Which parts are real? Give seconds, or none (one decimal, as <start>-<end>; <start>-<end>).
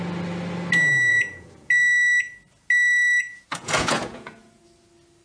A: 0.0-1.1; 1.7-3.3; 4.6-5.2